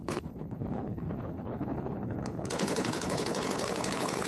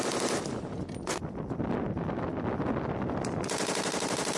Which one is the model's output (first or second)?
first